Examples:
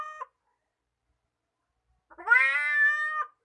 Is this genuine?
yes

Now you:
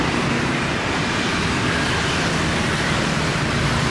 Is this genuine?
no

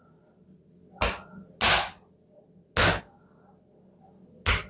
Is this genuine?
yes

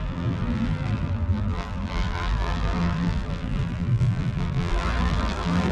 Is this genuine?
no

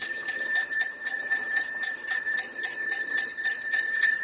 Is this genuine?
no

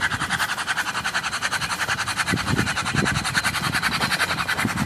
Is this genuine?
yes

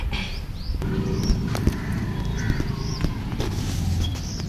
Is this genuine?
yes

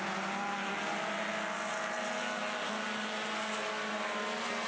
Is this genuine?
yes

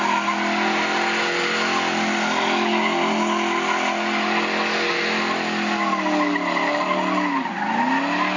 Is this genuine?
yes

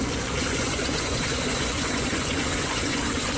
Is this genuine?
no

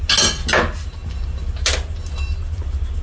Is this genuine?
yes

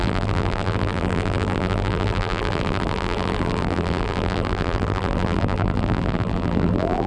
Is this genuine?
no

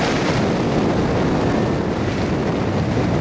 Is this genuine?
yes